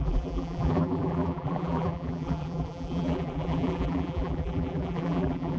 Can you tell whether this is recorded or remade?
remade